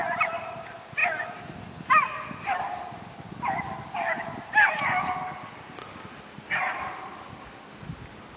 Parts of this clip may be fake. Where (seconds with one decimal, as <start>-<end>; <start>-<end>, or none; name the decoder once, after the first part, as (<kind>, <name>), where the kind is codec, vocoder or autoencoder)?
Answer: none